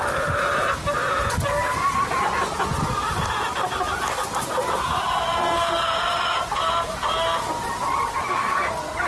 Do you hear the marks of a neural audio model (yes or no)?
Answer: no